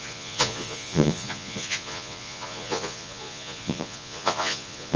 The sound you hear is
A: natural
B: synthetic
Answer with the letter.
B